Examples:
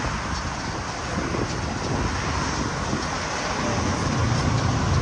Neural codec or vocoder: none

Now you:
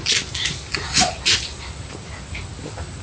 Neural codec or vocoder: none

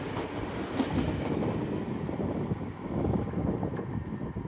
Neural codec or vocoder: none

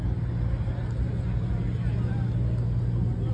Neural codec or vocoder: none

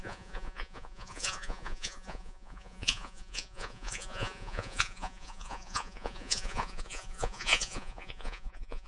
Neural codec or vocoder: vocoder, Vocos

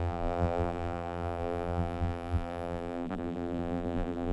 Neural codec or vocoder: vocoder, BigVGAN v2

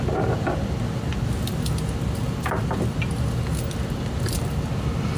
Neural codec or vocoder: none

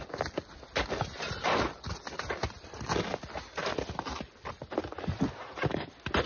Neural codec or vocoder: none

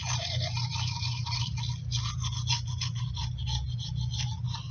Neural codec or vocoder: none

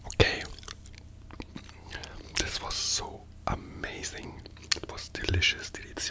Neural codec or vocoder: none